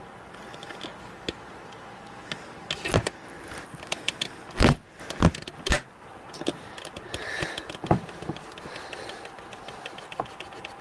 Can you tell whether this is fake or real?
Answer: real